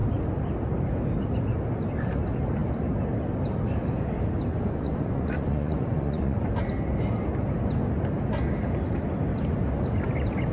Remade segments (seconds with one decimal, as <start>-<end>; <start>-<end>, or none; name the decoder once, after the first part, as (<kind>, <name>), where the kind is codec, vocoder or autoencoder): 4.5-6.5 (vocoder, Vocos)